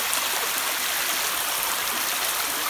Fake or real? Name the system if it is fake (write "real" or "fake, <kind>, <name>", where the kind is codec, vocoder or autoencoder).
real